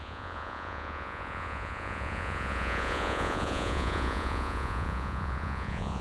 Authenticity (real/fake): fake